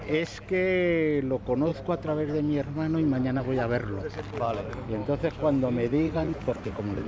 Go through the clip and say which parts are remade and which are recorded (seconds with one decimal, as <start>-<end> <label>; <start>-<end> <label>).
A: 0.0-5.9 recorded; 5.9-7.1 remade